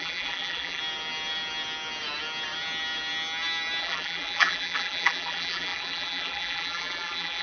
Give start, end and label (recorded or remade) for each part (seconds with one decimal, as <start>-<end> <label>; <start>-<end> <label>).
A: 0.0-0.8 remade; 0.8-3.8 recorded; 3.8-7.4 remade